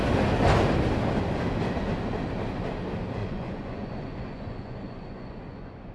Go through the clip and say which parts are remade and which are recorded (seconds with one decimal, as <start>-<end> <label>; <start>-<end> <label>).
0.0-3.2 recorded; 3.2-5.9 remade